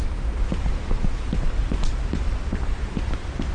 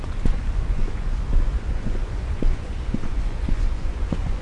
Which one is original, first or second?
first